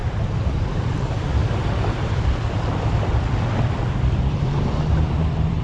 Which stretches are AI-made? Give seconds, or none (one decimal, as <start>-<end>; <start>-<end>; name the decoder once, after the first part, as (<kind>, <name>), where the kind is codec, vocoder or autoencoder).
0.0-5.6 (vocoder, BigVGAN v2)

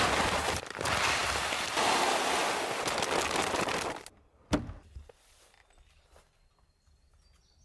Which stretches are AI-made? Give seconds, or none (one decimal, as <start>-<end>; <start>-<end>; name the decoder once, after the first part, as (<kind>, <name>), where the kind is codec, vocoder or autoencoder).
none